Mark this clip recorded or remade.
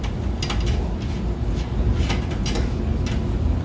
recorded